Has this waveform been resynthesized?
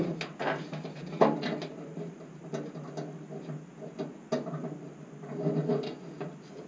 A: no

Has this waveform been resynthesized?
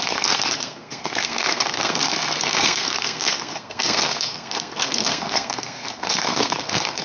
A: yes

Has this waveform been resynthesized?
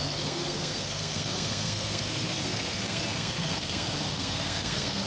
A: yes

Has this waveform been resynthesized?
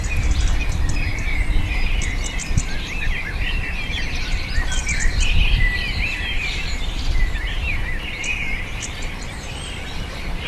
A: yes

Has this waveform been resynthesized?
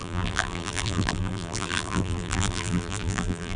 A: yes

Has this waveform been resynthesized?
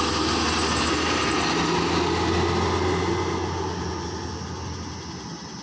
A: no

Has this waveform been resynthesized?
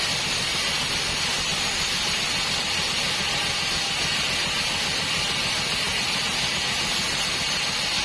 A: no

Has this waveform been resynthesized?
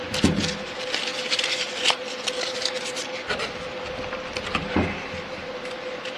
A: no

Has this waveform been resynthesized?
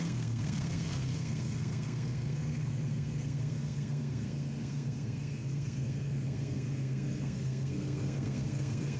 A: yes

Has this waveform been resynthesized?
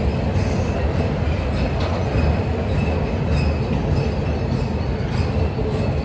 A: no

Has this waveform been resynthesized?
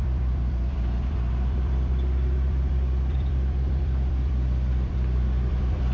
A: yes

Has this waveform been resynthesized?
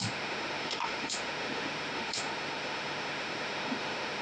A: yes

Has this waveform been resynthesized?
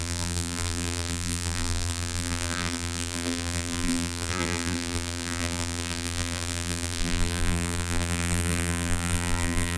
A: yes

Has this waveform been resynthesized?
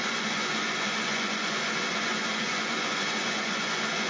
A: yes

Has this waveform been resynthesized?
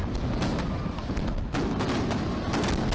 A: no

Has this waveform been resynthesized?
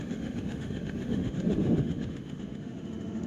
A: yes